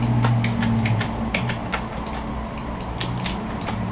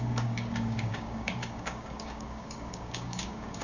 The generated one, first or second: second